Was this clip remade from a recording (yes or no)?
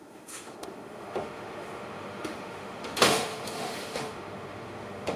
yes